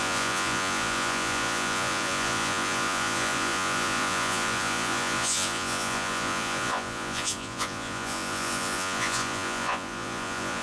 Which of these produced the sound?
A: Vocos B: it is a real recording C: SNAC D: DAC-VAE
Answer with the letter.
A